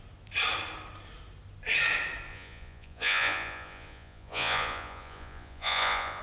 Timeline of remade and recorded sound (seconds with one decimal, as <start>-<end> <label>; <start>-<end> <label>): 0.0-2.3 recorded; 2.3-6.2 remade